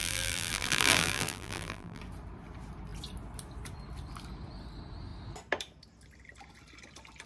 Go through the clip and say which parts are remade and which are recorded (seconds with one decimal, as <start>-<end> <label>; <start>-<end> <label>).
0.0-2.0 remade; 2.0-7.3 recorded